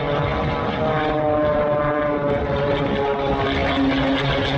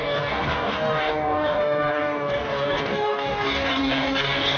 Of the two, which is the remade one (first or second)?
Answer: second